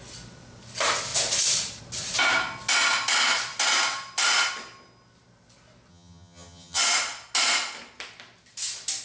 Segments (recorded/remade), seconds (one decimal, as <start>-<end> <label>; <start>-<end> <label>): 0.0-5.9 recorded; 5.9-6.8 remade; 6.8-9.0 recorded